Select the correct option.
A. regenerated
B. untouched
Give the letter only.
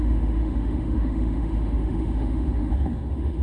A